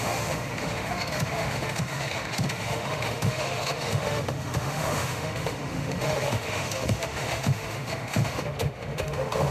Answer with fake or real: fake